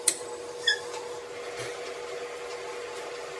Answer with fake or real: real